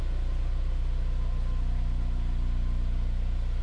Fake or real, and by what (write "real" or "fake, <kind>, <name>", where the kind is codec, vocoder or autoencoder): real